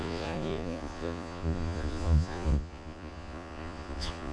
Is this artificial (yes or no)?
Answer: yes